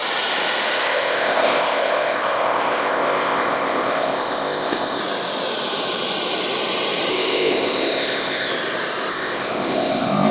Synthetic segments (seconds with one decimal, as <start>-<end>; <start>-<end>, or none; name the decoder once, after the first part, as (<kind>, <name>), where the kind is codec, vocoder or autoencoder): 0.8-5.0 (codec, ZipCodec); 7.1-8.5; 9.1-10.3